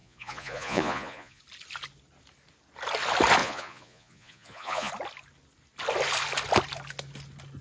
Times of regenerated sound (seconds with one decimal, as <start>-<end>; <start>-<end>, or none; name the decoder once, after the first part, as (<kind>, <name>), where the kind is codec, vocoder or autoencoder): 0.0-1.4 (vocoder, Vocos); 3.4-4.9